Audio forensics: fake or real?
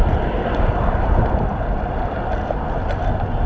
real